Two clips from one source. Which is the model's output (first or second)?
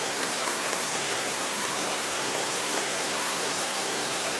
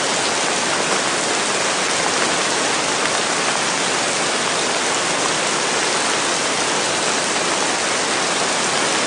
first